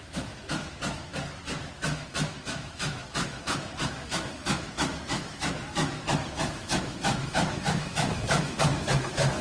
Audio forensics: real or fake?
fake